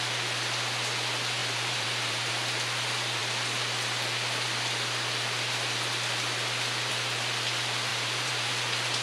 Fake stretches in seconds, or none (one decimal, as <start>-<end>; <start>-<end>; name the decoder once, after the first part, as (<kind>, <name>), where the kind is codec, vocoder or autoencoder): 1.4-2.3 (vocoder, BigVGAN v2); 7.9-8.5

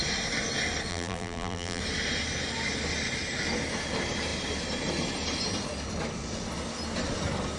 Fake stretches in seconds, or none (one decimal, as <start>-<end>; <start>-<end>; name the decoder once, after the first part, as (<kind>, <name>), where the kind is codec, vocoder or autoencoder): 0.9-1.8 (vocoder, BigVGAN v2)

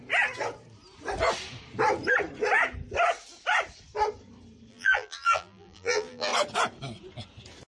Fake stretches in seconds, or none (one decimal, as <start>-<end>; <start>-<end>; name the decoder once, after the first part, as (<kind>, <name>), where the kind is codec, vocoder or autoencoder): 4.7-6.3 (vocoder, BigVGAN v2)

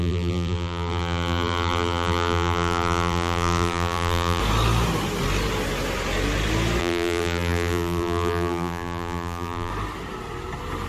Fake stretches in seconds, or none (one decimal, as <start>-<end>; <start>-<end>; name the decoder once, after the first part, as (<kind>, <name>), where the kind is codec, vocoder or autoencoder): 0.0-4.4 (vocoder, BigVGAN v2); 6.8-9.7

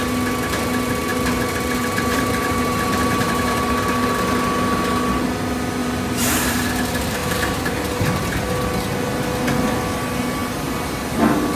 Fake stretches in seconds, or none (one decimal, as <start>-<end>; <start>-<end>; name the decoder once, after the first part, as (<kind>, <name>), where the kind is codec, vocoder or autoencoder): 1.1-3.7 (vocoder, BigVGAN v2); 5.8-6.7; 7.2-8.0

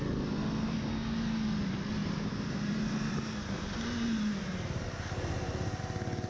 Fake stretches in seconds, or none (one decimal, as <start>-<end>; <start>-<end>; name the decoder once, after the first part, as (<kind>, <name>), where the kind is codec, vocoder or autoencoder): 2.0-5.8 (vocoder, BigVGAN v2)

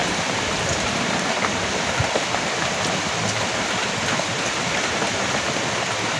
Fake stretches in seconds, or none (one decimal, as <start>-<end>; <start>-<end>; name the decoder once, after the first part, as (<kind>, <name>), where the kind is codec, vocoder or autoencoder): 0.0-1.6 (vocoder, BigVGAN v2)